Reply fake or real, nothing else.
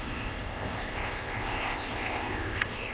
fake